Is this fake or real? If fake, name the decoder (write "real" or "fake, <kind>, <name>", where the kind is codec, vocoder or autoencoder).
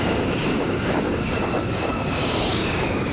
fake, codec, DAC